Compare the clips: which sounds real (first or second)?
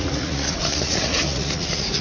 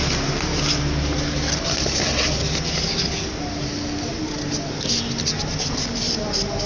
second